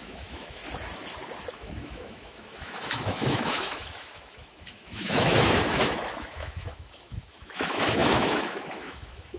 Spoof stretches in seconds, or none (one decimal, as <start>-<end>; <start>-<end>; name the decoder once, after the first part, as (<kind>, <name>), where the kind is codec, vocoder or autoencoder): 0.0-0.6 (autoencoder, DAC-VAE); 1.5-9.4